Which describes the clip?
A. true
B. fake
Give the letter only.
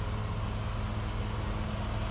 A